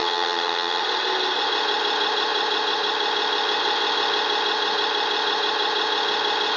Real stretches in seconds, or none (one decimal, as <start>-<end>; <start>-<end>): 0.8-6.6